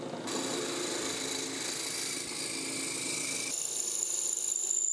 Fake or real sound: real